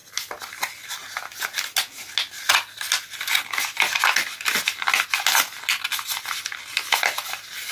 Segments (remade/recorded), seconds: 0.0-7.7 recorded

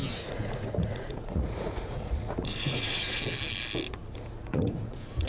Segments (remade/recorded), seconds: 0.0-3.2 remade; 3.2-3.9 recorded; 3.9-5.3 remade

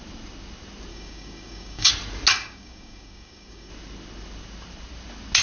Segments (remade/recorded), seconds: 0.0-0.9 recorded; 0.9-1.9 remade; 1.9-2.3 recorded; 2.3-3.7 remade; 3.7-5.4 recorded

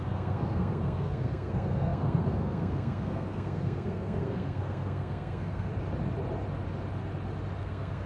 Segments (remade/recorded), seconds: 0.0-5.7 remade; 5.7-7.6 recorded; 7.6-8.1 remade

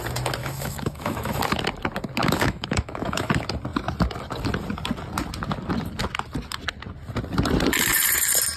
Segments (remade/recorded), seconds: 0.0-0.4 recorded; 0.4-1.4 remade; 1.4-2.2 recorded; 2.2-3.3 remade; 3.3-8.6 recorded

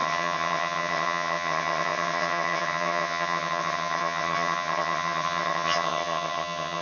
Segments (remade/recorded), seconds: 0.0-6.8 remade

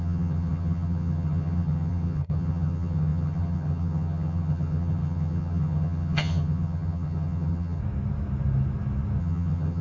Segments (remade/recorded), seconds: 0.0-7.8 remade; 7.8-9.2 recorded; 9.2-9.8 remade

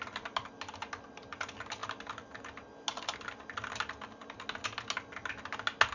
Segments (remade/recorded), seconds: 0.0-5.9 recorded